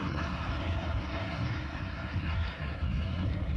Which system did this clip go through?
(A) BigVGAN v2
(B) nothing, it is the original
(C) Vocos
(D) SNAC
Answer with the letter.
D